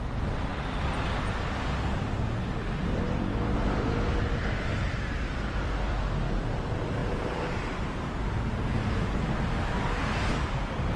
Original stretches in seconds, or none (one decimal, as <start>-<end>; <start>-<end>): 0.0-11.0